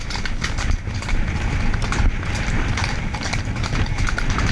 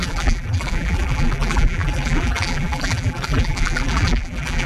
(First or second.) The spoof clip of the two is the second